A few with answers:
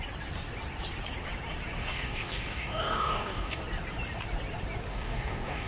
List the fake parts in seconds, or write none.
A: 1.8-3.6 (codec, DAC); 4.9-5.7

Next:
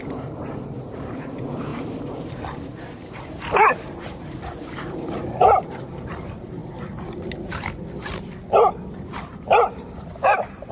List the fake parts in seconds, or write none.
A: 0.0-6.6 (vocoder, BigVGAN v2); 9.2-10.7

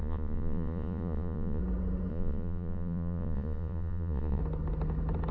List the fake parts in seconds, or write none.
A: 0.0-1.6 (vocoder, Vocos); 2.1-4.4

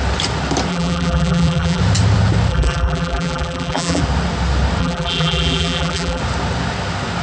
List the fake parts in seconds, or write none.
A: 0.7-1.8 (vocoder, BigVGAN v2); 2.5-4.0; 4.8-6.2

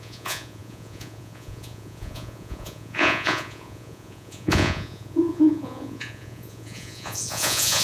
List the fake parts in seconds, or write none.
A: 0.0-7.8 (vocoder, Vocos)

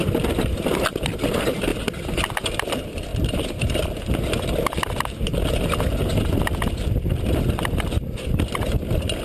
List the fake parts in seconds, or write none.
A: none

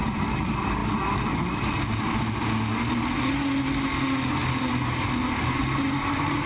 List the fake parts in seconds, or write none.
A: none

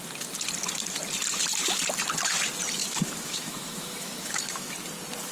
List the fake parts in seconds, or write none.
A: 2.8-4.7 (autoencoder, DAC-VAE)